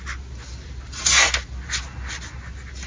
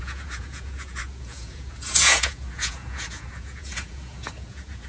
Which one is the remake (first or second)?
second